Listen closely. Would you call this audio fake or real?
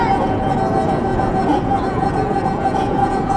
fake